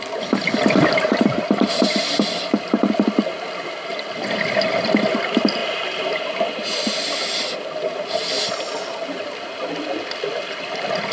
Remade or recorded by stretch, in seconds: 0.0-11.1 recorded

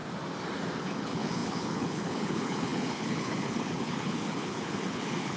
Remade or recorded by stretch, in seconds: 0.0-0.8 recorded; 0.8-5.4 remade

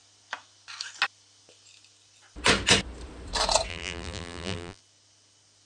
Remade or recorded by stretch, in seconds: 0.0-3.7 recorded; 3.7-4.8 remade; 4.8-5.7 recorded

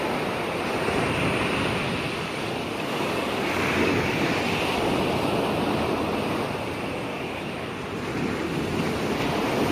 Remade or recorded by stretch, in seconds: 0.0-2.1 recorded; 2.1-4.3 remade; 4.3-7.1 recorded; 7.1-7.7 remade; 7.7-9.7 recorded

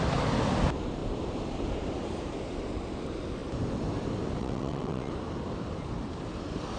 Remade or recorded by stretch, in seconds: 0.0-4.4 recorded; 4.4-5.1 remade; 5.1-6.8 recorded

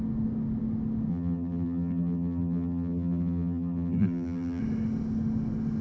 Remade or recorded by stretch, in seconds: 0.0-1.1 recorded; 1.1-4.6 remade; 4.6-5.8 recorded